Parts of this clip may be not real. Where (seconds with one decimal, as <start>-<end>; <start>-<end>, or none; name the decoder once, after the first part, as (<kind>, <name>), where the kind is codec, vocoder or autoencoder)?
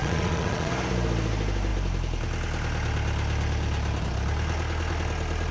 0.0-0.7 (vocoder, Vocos)